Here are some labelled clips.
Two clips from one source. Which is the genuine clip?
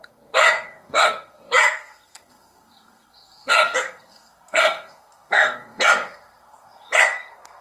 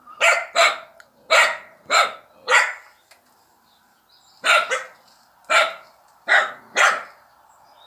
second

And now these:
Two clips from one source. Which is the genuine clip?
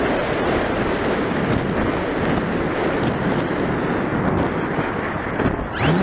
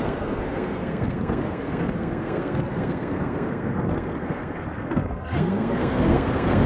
first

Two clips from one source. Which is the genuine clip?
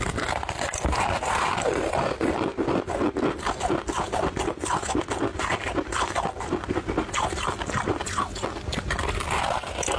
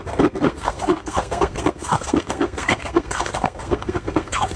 first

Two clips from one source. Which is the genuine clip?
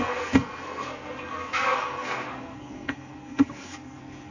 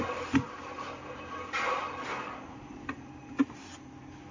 second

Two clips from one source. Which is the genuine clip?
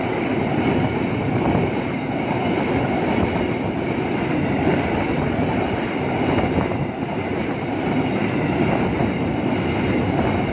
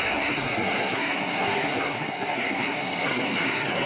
first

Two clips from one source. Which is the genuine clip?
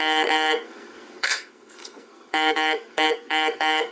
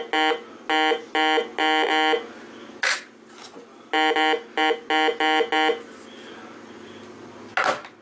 second